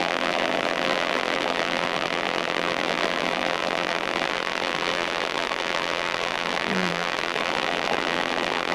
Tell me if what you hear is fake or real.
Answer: fake